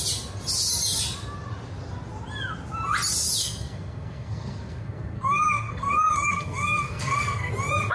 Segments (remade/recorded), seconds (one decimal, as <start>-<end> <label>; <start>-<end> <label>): 0.0-3.4 recorded; 3.4-7.5 remade; 7.5-7.9 recorded